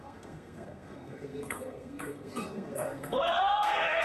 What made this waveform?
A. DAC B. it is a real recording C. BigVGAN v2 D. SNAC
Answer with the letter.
D